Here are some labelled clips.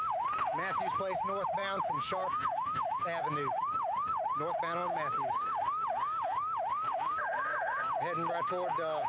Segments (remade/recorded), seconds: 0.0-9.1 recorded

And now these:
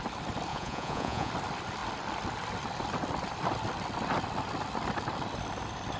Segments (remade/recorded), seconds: 0.0-0.5 recorded; 0.5-1.3 remade; 1.3-6.0 recorded

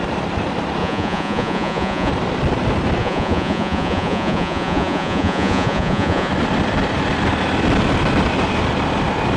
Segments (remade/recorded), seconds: 0.0-0.8 recorded; 0.8-2.1 remade; 2.1-3.0 recorded; 3.0-6.3 remade; 6.3-9.4 recorded

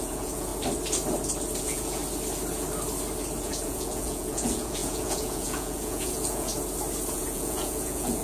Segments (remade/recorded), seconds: 0.0-0.5 remade; 0.5-1.6 recorded; 1.6-2.0 remade; 2.0-3.4 recorded; 3.4-6.5 remade; 6.5-7.1 recorded; 7.1-8.2 remade

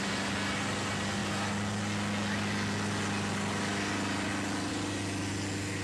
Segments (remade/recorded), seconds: 0.0-5.8 recorded

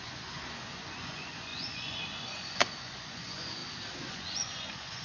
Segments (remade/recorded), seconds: 0.0-3.6 remade; 3.6-4.1 recorded; 4.1-5.0 remade

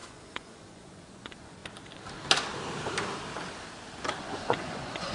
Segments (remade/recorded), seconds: 0.0-1.6 remade; 1.6-4.2 recorded; 4.2-5.1 remade

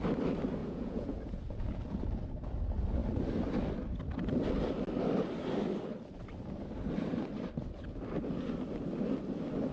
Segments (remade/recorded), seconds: 0.0-0.6 recorded; 0.6-2.0 remade; 2.0-9.7 recorded